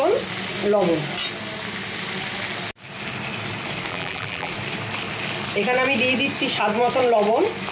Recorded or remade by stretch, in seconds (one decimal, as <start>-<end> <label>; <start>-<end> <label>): 0.0-3.9 recorded; 3.9-4.5 remade; 4.5-7.7 recorded